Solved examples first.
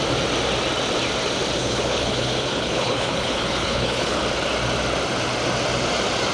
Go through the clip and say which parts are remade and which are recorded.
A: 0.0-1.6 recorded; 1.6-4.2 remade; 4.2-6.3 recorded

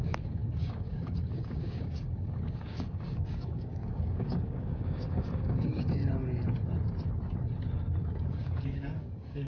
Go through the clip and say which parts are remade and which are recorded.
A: 0.0-6.0 remade; 6.0-8.0 recorded; 8.0-9.5 remade

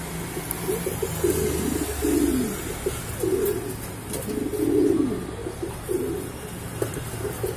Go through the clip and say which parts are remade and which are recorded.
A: 0.0-7.6 recorded

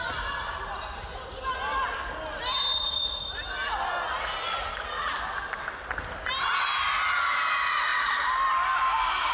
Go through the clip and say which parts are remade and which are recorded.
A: 0.0-9.3 recorded

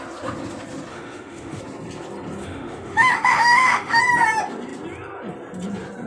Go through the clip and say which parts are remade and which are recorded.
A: 0.0-0.9 recorded; 0.9-1.6 remade; 1.6-2.4 recorded; 2.4-4.0 remade; 4.0-6.1 recorded

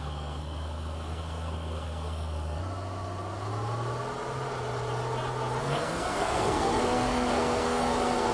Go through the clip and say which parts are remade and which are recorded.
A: 0.0-2.6 remade; 2.6-5.6 recorded; 5.6-8.3 remade

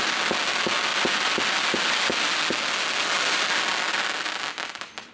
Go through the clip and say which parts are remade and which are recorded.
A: 0.0-5.1 recorded